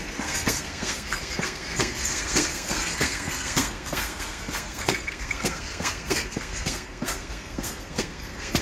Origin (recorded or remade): remade